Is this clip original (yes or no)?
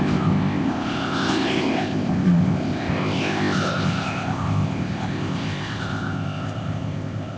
no